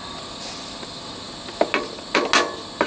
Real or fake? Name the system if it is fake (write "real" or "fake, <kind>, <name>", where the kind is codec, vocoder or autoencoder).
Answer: real